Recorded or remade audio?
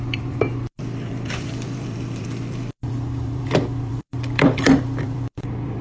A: remade